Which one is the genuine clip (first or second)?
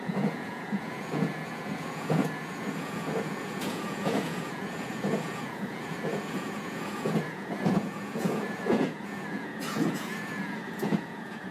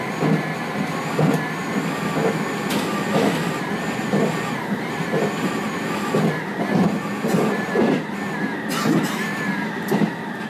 second